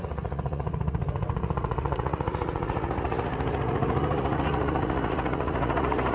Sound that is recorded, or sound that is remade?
remade